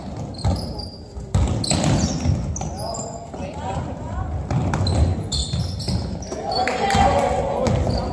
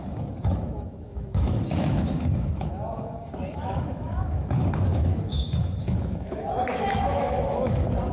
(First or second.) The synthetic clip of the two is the second